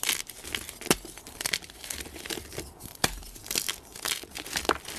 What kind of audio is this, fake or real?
real